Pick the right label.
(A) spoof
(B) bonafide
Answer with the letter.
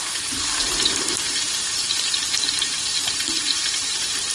A